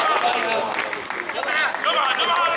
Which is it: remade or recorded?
recorded